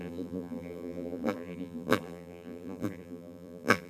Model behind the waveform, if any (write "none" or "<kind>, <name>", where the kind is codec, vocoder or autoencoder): vocoder, BigVGAN v2